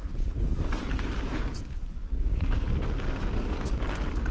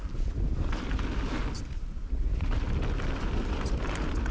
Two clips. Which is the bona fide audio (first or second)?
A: second